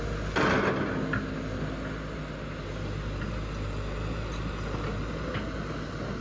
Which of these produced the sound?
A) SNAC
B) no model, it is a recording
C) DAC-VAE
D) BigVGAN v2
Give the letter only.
B